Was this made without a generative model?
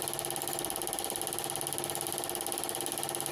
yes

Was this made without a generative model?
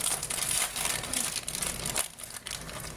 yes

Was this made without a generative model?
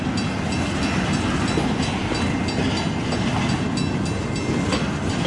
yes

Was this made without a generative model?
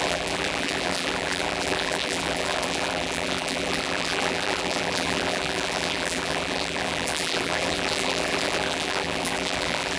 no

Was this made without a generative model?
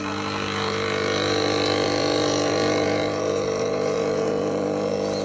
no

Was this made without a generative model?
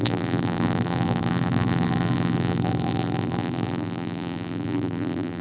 no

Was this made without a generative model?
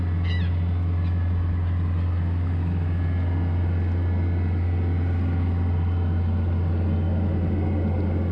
yes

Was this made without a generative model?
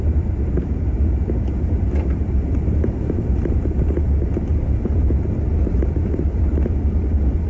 no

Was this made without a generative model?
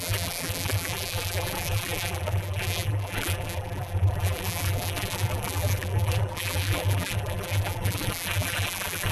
no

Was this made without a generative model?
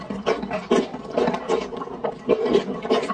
yes